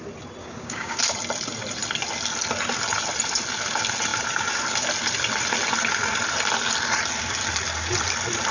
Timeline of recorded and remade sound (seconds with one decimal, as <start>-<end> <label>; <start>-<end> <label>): 0.0-0.4 recorded; 0.4-1.0 remade; 1.0-8.5 recorded